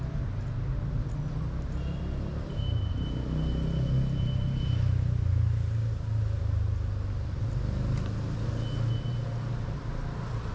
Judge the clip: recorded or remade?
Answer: recorded